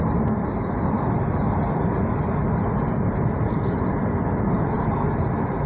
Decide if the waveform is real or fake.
real